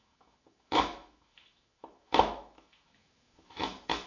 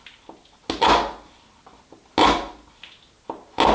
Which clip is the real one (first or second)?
second